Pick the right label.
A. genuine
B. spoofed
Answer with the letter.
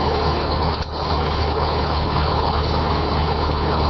B